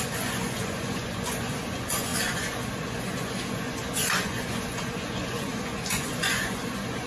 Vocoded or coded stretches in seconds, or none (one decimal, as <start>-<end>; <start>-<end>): 0.0-7.1